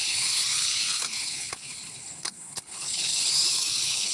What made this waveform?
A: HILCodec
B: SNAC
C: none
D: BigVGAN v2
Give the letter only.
A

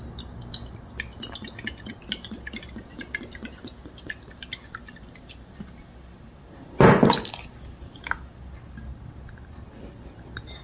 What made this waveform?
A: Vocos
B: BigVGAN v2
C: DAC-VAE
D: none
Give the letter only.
D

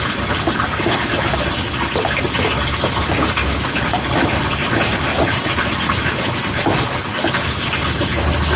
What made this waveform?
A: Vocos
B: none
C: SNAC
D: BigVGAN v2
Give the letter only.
B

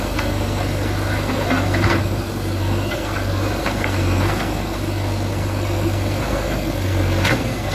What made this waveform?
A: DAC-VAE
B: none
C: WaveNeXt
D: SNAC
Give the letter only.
D